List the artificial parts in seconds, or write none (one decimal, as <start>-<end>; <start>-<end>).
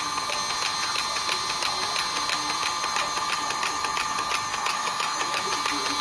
4.5-5.4